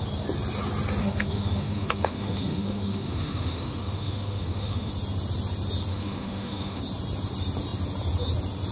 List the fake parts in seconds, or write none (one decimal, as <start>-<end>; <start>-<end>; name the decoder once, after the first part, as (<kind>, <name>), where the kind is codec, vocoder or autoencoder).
1.0-4.9 (autoencoder, DAC-VAE); 5.9-6.8